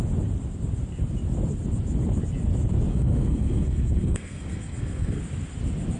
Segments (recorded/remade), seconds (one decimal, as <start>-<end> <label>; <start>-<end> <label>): 0.0-2.9 recorded; 2.9-5.2 remade; 5.2-6.0 recorded